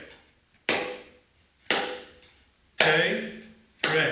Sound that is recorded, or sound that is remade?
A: recorded